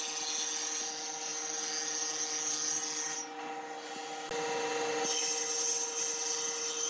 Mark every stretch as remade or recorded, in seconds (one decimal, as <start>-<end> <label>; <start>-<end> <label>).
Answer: 0.0-6.9 recorded